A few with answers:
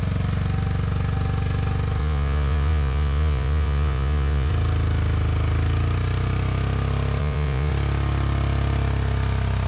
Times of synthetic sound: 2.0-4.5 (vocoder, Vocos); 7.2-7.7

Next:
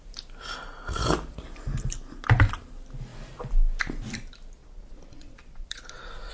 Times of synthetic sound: 4.6-6.3 (vocoder, Vocos)